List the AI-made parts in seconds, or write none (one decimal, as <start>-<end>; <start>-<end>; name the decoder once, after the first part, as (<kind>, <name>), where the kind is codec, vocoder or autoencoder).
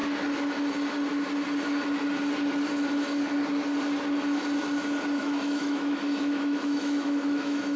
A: 5.2-7.8 (autoencoder, DAC-VAE)